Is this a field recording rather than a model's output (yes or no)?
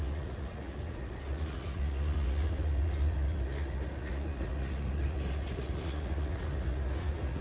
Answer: no